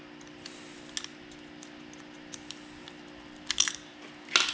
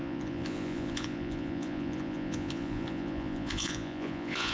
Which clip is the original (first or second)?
first